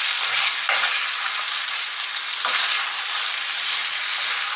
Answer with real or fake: real